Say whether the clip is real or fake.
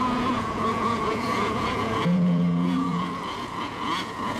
fake